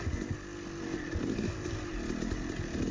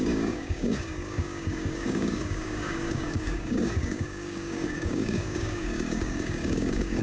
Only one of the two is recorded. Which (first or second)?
first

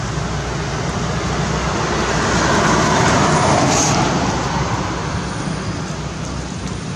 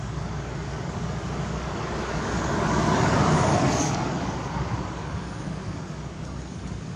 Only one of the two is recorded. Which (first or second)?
first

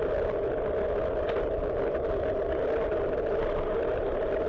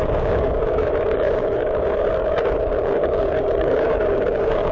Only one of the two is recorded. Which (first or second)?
first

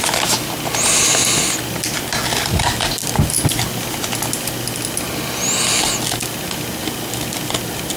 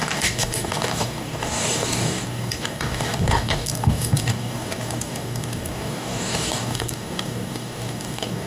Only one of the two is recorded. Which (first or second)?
first